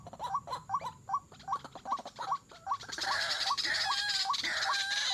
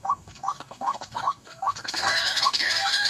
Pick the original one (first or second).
first